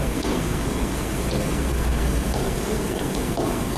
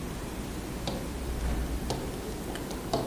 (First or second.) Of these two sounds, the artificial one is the first